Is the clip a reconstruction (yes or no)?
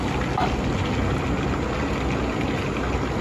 no